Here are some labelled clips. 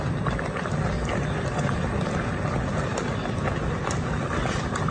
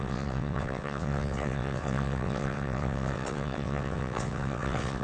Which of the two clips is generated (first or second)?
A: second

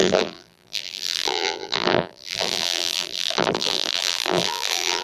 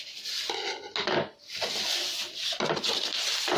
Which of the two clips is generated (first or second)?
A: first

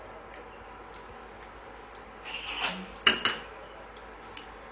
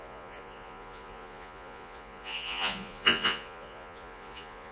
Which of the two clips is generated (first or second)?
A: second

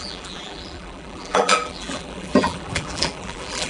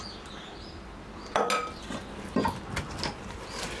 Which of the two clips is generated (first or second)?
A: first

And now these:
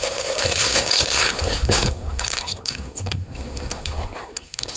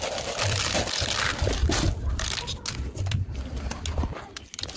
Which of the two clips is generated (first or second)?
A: first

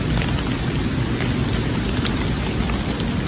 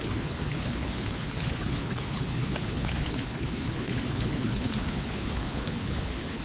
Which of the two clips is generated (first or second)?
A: second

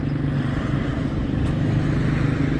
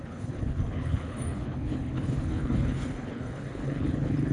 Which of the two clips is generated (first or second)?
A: second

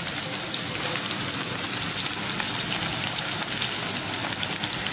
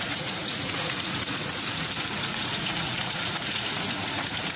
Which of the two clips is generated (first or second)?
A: second